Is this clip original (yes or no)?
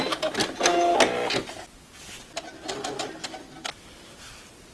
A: yes